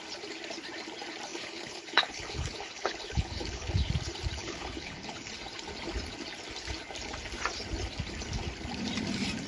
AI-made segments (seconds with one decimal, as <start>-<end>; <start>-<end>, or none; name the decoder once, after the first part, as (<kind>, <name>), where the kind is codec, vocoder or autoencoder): 1.3-3.9 (codec, HILCodec); 4.4-5.3